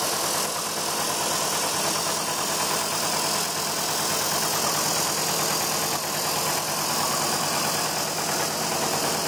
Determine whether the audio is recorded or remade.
recorded